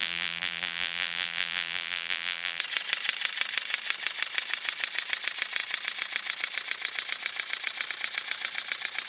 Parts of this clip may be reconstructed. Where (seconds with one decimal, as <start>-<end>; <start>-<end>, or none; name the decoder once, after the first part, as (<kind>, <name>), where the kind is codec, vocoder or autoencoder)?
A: 0.0-2.6 (vocoder, BigVGAN v2)